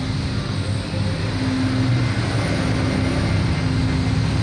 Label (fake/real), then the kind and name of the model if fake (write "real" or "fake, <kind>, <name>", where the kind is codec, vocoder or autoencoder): real